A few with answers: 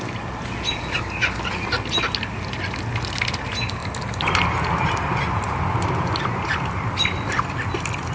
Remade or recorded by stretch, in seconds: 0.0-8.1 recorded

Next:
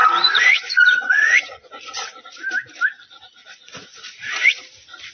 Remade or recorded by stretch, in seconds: 0.0-2.2 remade; 2.2-3.4 recorded; 3.4-4.6 remade; 4.6-5.1 recorded